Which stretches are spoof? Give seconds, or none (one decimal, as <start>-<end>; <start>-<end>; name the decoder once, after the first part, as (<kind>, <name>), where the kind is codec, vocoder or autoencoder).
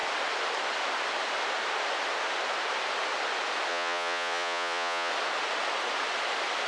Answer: 3.7-5.1 (vocoder, Vocos)